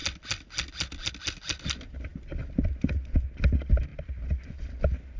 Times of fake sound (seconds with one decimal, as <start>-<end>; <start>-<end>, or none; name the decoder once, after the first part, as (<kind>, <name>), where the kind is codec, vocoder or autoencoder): none